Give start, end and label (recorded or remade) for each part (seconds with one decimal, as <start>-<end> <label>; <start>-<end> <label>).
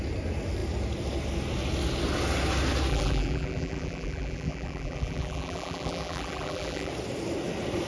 0.0-2.9 recorded; 2.9-6.9 remade; 6.9-7.9 recorded